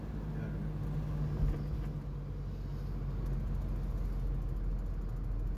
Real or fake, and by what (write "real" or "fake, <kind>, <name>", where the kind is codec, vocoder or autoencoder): real